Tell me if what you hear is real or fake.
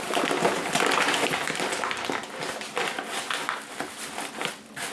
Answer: real